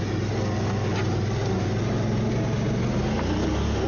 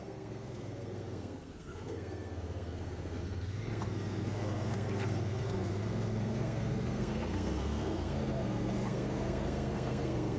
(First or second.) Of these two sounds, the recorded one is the first